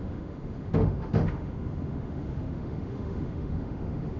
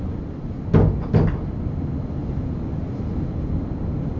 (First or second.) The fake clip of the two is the first